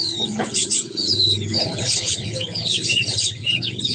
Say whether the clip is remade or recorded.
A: remade